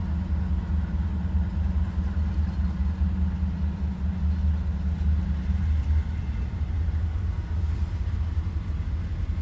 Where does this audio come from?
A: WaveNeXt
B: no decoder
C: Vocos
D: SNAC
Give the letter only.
B